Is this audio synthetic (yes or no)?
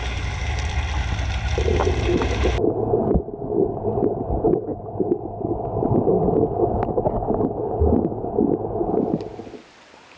no